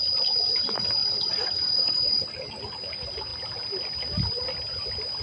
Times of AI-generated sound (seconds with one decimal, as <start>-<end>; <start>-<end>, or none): none